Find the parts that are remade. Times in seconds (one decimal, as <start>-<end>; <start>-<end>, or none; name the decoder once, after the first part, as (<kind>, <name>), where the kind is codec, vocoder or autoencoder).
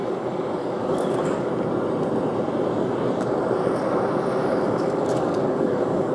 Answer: 0.0-1.5 (codec, DAC); 4.4-6.1